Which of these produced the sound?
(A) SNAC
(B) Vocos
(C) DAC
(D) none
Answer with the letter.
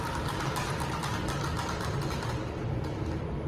D